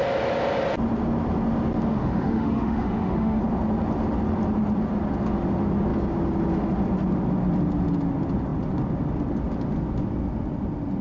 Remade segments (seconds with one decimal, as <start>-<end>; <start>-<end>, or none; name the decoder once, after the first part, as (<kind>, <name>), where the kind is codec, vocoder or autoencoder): 1.9-3.4 (autoencoder, DAC-VAE)